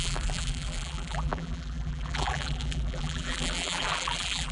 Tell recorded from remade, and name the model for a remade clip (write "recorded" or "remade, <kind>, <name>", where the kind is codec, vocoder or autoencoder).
remade, vocoder, BigVGAN v2